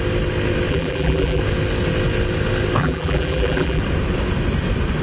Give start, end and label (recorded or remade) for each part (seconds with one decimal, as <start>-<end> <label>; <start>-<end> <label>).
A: 0.0-0.7 recorded; 0.7-1.4 remade; 1.4-2.8 recorded; 2.8-3.8 remade; 3.8-5.0 recorded